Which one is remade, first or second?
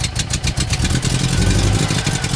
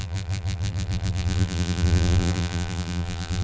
second